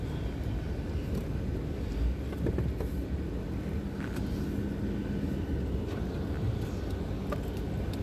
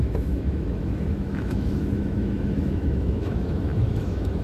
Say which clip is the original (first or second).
first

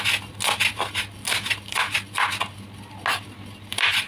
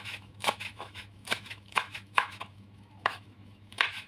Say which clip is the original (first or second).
first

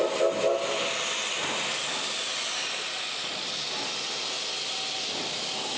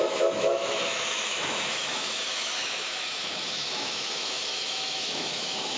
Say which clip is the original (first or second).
first